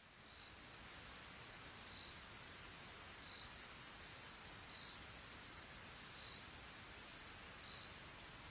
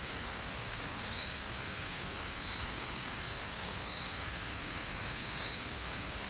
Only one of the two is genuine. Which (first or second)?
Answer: first